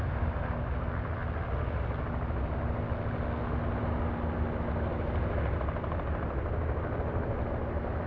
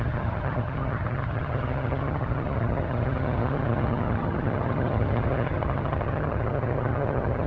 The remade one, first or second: second